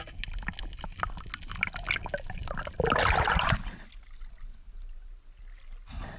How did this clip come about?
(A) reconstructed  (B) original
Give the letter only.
B